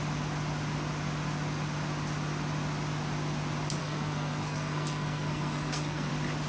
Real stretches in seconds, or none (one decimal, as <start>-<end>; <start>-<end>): 0.0-3.8; 6.1-6.5